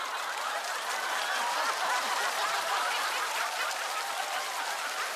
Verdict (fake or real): real